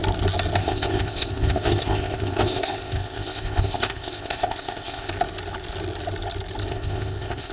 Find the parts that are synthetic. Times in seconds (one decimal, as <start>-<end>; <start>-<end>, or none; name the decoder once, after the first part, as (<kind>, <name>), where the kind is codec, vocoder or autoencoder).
0.6-5.1 (codec, ZipCodec); 6.7-7.5